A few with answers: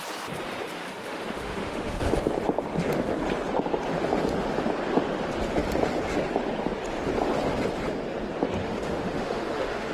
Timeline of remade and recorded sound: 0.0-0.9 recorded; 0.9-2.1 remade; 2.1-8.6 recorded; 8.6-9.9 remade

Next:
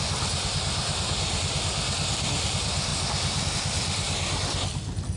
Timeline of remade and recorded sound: 0.0-5.2 recorded

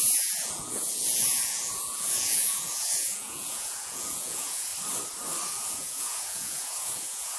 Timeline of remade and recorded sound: 0.0-4.7 remade; 4.7-5.5 recorded; 5.5-7.4 remade

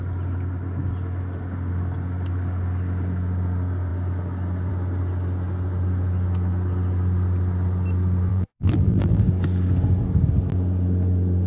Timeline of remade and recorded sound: 0.0-8.3 recorded; 8.3-9.2 remade; 9.2-11.5 recorded

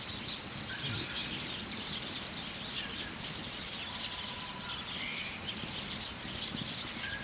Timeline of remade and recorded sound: 0.0-7.2 recorded

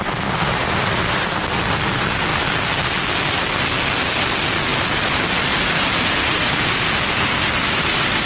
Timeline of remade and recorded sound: 0.0-8.3 recorded